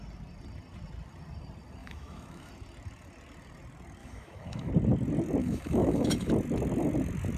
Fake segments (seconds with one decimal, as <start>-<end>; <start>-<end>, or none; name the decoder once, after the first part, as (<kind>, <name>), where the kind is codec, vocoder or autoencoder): 1.8-2.5 (autoencoder, DAC-VAE); 4.0-4.7; 5.4-6.3

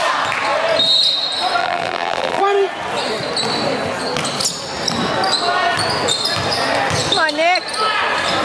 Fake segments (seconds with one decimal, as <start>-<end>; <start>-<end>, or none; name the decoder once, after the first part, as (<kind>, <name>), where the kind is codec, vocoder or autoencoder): 1.6-2.4 (vocoder, BigVGAN v2)

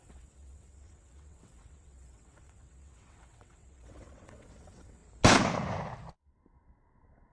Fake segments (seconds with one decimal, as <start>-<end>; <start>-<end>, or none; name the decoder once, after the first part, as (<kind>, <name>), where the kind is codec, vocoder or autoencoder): 0.0-5.0 (vocoder, WaveNeXt)